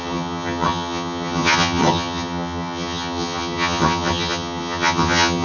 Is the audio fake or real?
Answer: fake